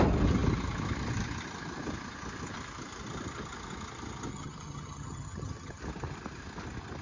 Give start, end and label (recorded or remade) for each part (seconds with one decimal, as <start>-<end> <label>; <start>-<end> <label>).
0.0-4.3 recorded; 4.3-5.8 remade; 5.8-7.0 recorded